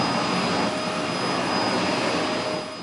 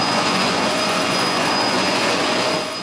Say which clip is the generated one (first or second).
second